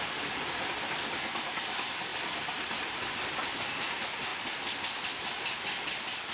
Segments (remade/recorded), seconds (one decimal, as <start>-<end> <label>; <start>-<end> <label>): 0.0-2.1 recorded; 2.1-3.6 remade; 3.6-6.3 recorded

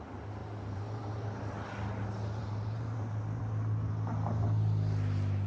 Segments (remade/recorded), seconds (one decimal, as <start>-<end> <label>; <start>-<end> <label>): 0.0-0.4 recorded; 0.4-1.4 remade; 1.4-2.4 recorded; 2.4-3.4 remade; 3.4-5.5 recorded

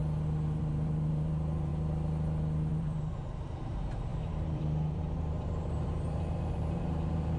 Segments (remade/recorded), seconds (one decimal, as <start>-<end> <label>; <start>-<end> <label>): 0.0-0.6 recorded; 0.6-1.7 remade; 1.7-2.7 recorded; 2.7-7.4 remade

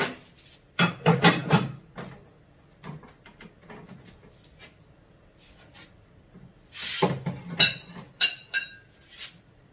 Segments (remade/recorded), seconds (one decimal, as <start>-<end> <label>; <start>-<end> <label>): 0.0-9.7 recorded

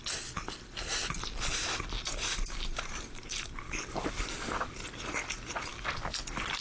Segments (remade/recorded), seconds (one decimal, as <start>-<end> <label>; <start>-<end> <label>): 0.0-1.0 recorded; 1.0-4.0 remade; 4.0-6.6 recorded

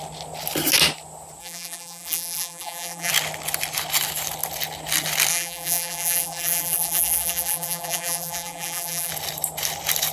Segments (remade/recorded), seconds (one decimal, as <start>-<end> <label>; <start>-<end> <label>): 0.0-1.4 recorded; 1.4-3.1 remade; 3.1-5.3 recorded; 5.3-9.1 remade; 9.1-10.1 recorded

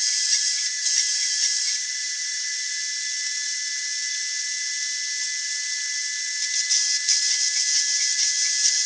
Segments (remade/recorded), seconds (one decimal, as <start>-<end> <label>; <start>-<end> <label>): 0.0-2.7 remade; 2.7-8.9 recorded

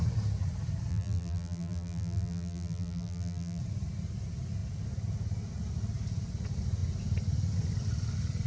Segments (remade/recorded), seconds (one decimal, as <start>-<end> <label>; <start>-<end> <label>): 0.0-0.9 recorded; 0.9-3.6 remade; 3.6-8.5 recorded